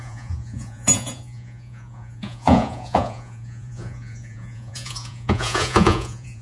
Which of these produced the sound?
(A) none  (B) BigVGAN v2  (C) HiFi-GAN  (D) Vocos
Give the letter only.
D